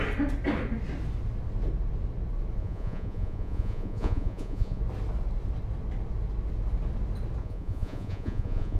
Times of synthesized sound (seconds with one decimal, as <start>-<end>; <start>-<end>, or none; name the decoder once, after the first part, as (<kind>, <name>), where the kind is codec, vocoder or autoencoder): 2.6-4.8 (vocoder, Vocos); 7.4-8.8